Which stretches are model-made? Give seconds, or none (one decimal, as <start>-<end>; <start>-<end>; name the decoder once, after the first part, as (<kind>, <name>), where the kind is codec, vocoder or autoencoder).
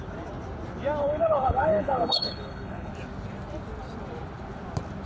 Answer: 1.0-2.9 (codec, HILCodec)